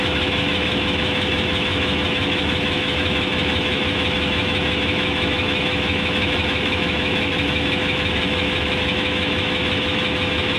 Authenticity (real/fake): fake